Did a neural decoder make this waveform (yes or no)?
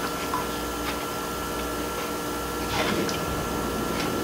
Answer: no